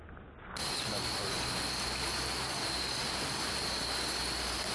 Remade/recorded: recorded